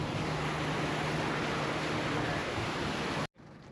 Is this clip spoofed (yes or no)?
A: no